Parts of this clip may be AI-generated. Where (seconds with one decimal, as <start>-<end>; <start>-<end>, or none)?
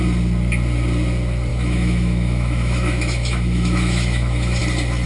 1.5-4.6